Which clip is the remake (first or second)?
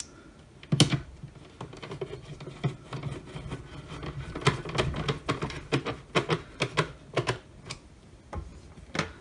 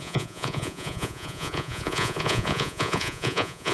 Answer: second